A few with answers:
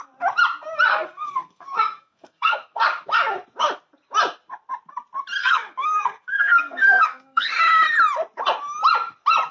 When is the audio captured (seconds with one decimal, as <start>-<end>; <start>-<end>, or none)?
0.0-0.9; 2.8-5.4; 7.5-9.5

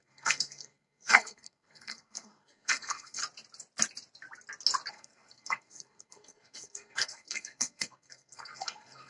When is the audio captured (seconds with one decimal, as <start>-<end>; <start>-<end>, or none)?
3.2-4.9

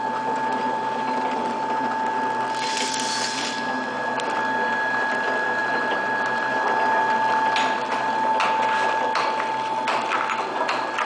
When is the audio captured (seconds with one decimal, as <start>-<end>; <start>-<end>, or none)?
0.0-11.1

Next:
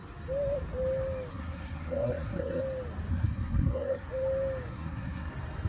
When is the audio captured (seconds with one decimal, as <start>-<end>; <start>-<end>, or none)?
0.0-1.3; 2.6-3.1; 4.1-4.7; 5.3-5.7

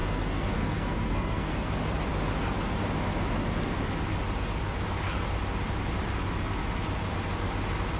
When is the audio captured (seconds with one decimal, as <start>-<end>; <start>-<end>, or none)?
1.7-8.0